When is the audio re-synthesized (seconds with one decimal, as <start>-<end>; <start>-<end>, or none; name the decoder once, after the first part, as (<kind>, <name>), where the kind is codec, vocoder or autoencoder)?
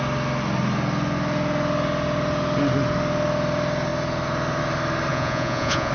5.1-5.9 (vocoder, Vocos)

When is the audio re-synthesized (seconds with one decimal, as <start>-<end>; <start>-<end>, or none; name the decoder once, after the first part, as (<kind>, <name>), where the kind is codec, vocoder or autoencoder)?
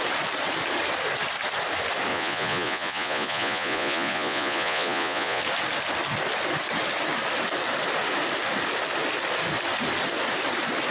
2.1-5.4 (vocoder, Vocos)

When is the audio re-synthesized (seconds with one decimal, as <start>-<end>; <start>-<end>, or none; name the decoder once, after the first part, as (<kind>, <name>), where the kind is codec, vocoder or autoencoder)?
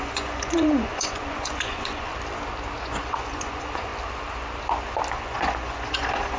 0.0-2.1 (vocoder, Vocos); 2.8-3.9; 5.1-6.4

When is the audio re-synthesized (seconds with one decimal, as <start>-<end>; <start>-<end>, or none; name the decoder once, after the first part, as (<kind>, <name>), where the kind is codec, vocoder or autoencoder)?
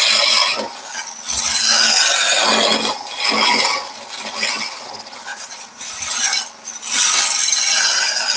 5.3-5.9 (vocoder, Vocos)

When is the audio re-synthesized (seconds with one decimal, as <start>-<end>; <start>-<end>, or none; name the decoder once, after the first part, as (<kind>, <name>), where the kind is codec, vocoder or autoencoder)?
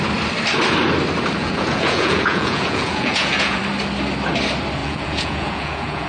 1.4-3.6 (vocoder, Vocos); 4.8-6.1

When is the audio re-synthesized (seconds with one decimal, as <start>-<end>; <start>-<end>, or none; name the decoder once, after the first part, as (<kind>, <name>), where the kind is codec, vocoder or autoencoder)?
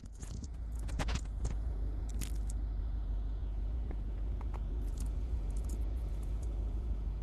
0.0-2.1 (vocoder, Vocos); 2.8-7.2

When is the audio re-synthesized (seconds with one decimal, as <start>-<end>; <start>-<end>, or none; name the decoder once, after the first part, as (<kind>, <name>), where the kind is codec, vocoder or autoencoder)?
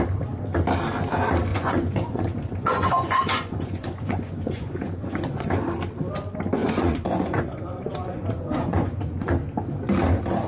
1.5-5.5 (vocoder, Vocos); 6.6-9.3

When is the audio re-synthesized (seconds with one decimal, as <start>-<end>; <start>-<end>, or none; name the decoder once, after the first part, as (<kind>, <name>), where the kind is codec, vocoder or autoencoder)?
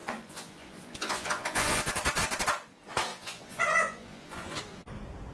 0.0-1.8 (vocoder, Vocos); 3.1-4.6